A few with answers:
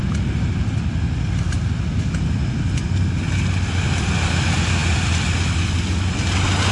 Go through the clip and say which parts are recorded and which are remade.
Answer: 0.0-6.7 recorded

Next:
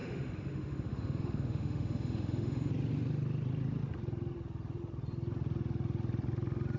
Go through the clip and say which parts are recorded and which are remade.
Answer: 0.0-2.7 remade; 2.7-6.8 recorded